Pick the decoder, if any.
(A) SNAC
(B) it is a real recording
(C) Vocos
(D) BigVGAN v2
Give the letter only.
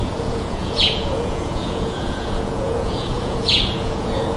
C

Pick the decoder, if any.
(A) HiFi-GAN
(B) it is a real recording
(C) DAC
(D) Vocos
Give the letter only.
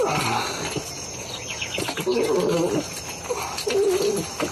B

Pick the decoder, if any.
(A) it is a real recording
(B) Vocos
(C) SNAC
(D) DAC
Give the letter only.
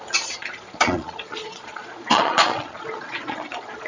B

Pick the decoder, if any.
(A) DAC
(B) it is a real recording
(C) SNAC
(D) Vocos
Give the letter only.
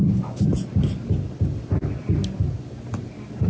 B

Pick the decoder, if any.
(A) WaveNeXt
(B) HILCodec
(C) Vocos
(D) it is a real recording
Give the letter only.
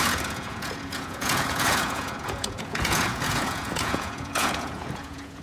C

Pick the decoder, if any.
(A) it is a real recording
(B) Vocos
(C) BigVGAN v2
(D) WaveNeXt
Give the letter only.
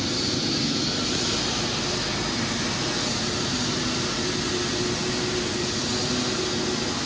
A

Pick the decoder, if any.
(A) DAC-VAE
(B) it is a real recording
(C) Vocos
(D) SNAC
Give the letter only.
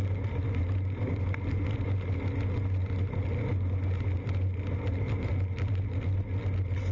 B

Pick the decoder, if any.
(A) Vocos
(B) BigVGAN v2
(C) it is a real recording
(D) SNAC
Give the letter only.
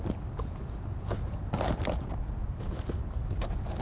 C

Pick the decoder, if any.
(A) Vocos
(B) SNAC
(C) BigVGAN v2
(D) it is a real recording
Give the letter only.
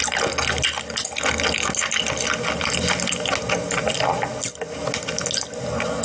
D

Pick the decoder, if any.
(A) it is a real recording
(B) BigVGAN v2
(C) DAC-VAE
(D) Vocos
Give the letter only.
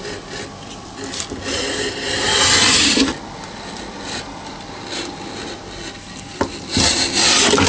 A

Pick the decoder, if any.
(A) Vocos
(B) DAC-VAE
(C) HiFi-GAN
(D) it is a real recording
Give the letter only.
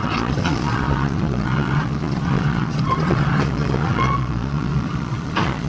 A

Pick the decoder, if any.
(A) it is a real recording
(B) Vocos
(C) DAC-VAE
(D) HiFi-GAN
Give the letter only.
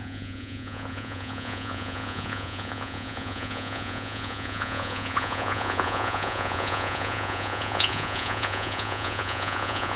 B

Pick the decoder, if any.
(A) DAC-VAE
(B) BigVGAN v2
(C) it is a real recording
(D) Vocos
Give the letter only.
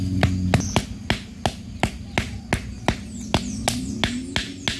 C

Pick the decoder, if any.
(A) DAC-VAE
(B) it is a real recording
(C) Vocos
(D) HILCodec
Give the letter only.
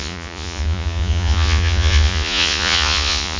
C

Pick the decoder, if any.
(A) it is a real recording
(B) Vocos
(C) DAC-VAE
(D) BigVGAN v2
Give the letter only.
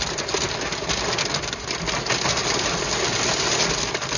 A